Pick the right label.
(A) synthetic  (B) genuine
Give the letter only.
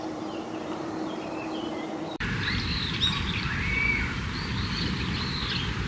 A